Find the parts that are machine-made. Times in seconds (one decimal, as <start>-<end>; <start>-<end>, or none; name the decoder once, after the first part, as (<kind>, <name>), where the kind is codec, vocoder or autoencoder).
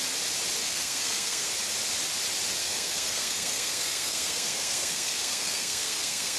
0.6-1.5 (codec, SNAC); 2.6-6.4